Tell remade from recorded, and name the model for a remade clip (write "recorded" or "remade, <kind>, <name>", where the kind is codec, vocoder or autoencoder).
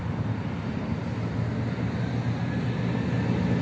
recorded